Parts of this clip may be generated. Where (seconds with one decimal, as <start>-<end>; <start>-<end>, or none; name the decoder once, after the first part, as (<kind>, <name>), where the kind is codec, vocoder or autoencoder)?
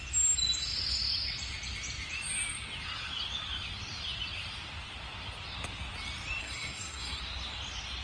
6.4-7.2 (codec, SNAC)